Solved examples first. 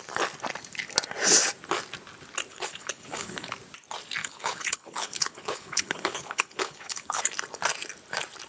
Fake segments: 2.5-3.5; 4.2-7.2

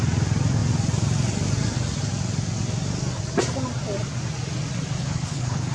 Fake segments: 5.0-5.7

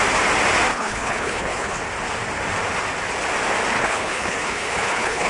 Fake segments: 0.7-1.8; 3.7-5.3

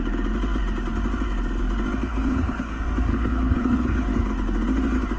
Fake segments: 2.1-2.7; 3.1-4.2

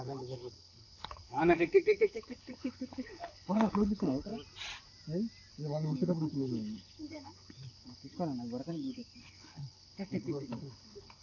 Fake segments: 0.0-4.3; 5.5-8.1; 8.7-11.2

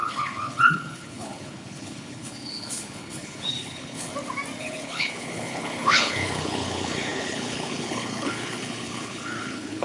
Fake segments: 0.0-4.1; 4.6-9.8